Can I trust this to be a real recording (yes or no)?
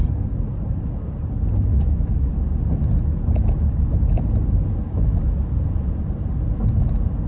yes